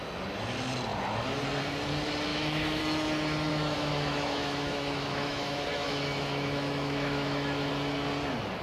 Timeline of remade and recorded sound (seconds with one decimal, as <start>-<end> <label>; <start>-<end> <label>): 0.0-2.3 recorded; 2.3-2.8 remade; 2.8-3.5 recorded; 3.5-7.7 remade; 7.7-8.6 recorded

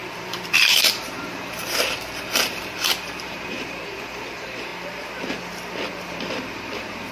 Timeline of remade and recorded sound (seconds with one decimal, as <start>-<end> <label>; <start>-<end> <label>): 0.0-4.7 remade; 4.7-5.9 recorded; 5.9-7.1 remade